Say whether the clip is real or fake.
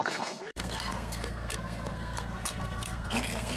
fake